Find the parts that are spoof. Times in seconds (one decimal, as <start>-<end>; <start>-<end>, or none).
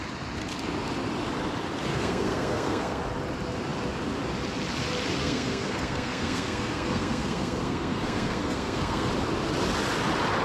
1.9-3.0; 5.2-9.1